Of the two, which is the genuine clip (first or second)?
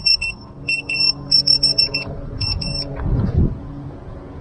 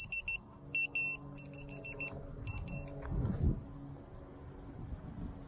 second